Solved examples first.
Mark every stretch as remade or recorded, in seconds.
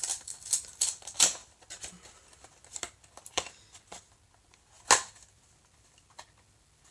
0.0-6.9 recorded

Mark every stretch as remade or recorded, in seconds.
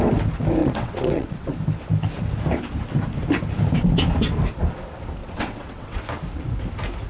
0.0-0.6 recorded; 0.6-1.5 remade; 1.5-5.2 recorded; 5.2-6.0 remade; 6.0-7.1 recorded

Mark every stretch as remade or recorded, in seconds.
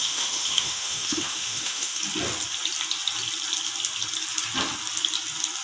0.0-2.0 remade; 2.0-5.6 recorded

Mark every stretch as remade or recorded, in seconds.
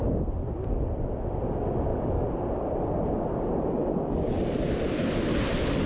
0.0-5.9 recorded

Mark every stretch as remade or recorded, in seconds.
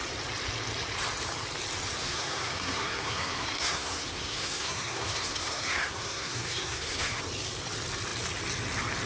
0.0-2.0 recorded; 2.0-7.2 remade; 7.2-9.1 recorded